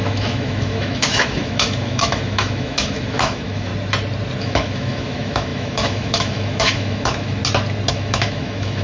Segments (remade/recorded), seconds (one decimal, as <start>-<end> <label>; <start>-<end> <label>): 0.0-3.7 remade; 3.7-4.4 recorded; 4.4-7.4 remade; 7.4-7.9 recorded; 7.9-8.8 remade